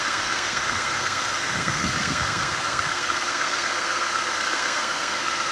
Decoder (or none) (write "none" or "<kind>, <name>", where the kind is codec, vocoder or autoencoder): codec, SNAC